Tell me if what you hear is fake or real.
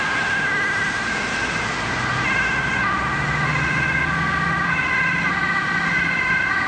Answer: real